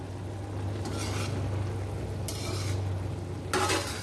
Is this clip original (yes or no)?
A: yes